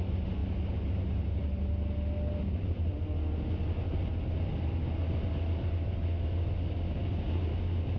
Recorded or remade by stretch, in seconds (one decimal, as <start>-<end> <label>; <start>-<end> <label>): 0.0-8.0 recorded